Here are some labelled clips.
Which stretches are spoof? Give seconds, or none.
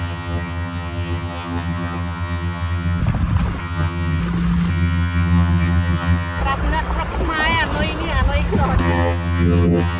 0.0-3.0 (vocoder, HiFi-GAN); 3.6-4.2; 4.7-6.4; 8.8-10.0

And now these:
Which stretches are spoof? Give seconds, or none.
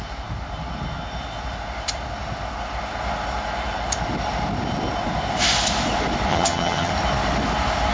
6.3-6.9 (vocoder, HiFi-GAN)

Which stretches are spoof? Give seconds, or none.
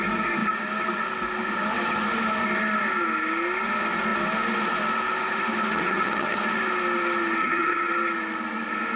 5.7-6.4 (vocoder, HiFi-GAN); 7.4-7.9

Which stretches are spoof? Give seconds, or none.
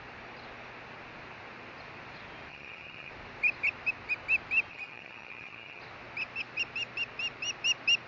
2.5-3.1 (vocoder, HiFi-GAN); 4.7-5.8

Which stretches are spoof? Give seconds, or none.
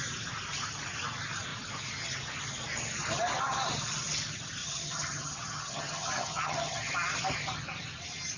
4.6-6.9 (vocoder, HiFi-GAN)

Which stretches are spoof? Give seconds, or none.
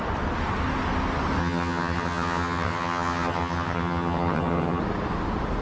1.4-4.8 (vocoder, HiFi-GAN)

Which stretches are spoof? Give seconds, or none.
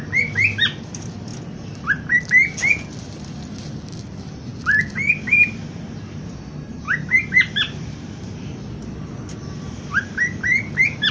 none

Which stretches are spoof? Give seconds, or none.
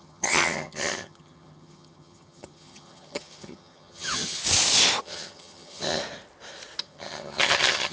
0.0-4.4 (vocoder, HiFi-GAN); 5.0-6.0; 6.8-7.9